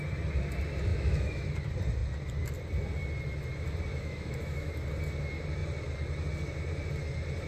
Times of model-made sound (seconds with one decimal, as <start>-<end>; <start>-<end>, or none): 0.9-1.6; 3.9-4.7